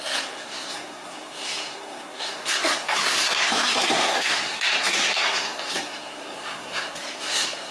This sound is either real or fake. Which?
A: fake